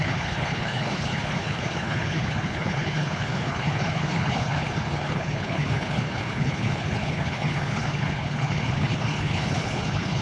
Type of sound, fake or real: fake